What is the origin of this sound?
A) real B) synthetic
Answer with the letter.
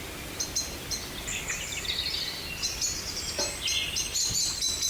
A